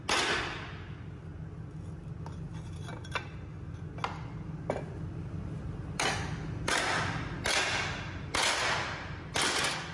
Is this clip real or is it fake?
real